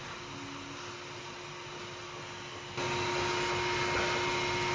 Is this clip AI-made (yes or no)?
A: no